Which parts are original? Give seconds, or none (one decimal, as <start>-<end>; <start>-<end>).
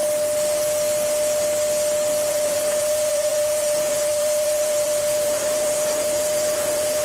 0.0-2.3